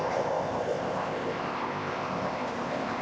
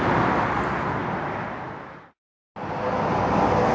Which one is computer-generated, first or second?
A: first